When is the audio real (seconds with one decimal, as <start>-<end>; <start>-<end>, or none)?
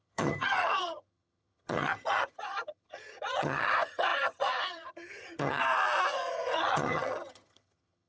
5.6-6.1